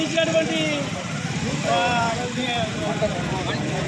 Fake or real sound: real